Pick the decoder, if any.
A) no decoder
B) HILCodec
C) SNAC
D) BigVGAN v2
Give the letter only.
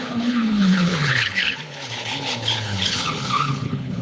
B